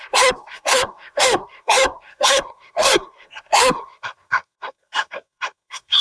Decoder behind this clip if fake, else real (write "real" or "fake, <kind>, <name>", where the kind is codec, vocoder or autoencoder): fake, codec, SNAC